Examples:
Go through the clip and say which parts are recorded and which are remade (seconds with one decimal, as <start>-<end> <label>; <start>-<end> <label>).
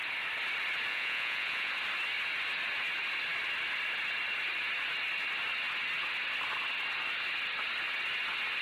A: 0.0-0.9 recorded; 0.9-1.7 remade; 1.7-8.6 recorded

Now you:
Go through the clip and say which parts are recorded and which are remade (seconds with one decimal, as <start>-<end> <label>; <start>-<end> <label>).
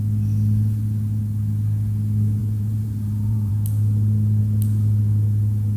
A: 0.0-2.4 recorded; 2.4-3.5 remade; 3.5-5.8 recorded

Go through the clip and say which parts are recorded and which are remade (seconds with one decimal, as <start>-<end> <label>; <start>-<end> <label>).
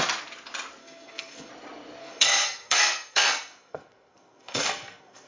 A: 0.0-0.8 recorded; 0.8-1.5 remade; 1.5-2.0 recorded; 2.0-5.3 remade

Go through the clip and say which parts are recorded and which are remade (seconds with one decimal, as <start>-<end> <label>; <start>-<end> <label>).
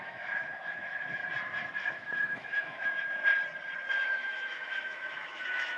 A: 0.0-1.2 remade; 1.2-1.8 recorded; 1.8-3.2 remade; 3.2-3.9 recorded; 3.9-5.8 remade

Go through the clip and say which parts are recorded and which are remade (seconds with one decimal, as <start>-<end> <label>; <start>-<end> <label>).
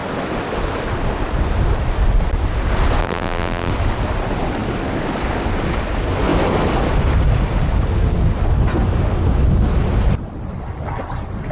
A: 0.0-3.0 recorded; 3.0-3.7 remade; 3.7-11.5 recorded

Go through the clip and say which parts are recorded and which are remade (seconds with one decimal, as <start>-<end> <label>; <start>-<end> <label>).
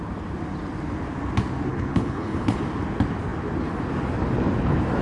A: 0.0-1.7 recorded; 1.7-2.6 remade; 2.6-5.0 recorded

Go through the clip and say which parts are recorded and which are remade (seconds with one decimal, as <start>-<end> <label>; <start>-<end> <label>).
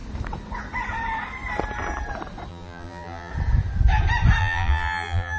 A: 0.0-2.5 recorded; 2.5-3.3 remade; 3.3-4.4 recorded; 4.4-5.4 remade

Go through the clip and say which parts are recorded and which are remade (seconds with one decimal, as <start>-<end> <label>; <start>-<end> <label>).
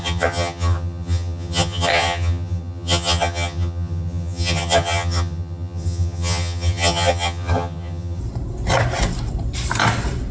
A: 0.0-8.2 remade; 8.2-10.3 recorded